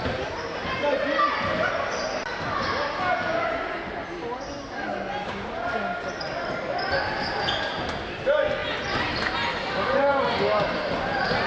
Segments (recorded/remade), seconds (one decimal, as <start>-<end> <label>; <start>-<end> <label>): 0.0-11.5 recorded

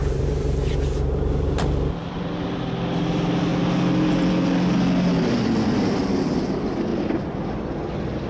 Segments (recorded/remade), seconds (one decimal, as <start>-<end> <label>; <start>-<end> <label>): 0.0-0.7 remade; 0.7-2.0 recorded; 2.0-2.5 remade; 2.5-8.3 recorded